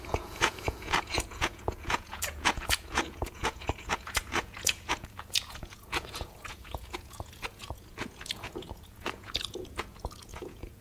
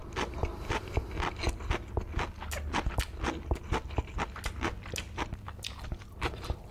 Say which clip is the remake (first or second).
first